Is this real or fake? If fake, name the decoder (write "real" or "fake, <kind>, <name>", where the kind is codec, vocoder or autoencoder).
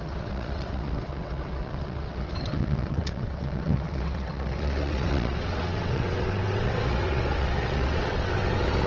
fake, vocoder, WaveNeXt